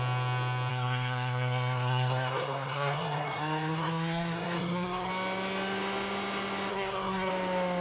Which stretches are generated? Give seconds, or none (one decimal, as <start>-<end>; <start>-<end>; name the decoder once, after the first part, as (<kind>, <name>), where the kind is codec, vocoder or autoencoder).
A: 0.7-5.1 (codec, SNAC); 6.7-7.3